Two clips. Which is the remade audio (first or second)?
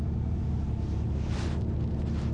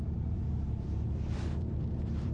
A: second